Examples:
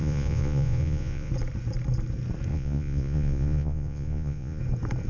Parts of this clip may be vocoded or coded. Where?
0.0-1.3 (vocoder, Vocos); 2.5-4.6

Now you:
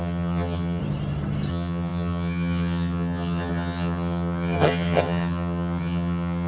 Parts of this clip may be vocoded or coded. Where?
0.0-0.8 (vocoder, HiFi-GAN); 1.5-6.5

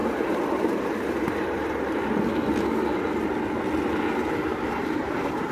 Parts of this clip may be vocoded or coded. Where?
0.0-1.8 (vocoder, BigVGAN v2); 4.5-5.5

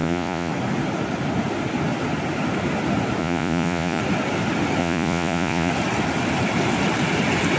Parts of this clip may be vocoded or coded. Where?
0.0-0.5 (vocoder, Vocos); 3.2-4.0; 4.8-5.7

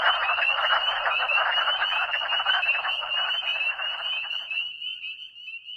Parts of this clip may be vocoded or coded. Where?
none